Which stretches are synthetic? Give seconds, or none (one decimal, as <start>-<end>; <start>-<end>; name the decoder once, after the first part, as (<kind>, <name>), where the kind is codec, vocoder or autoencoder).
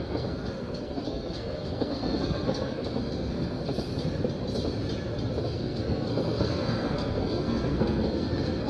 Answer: 0.0-3.9 (codec, SNAC); 5.4-8.7